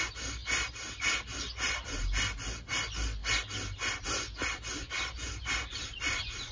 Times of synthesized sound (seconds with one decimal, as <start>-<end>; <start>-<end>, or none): none